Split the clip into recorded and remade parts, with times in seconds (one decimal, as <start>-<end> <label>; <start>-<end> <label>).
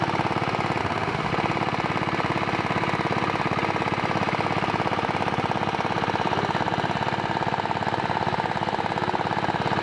0.0-0.8 recorded; 0.8-1.3 remade; 1.3-9.8 recorded